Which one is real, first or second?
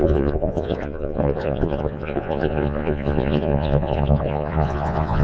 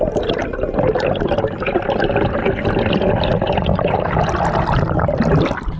second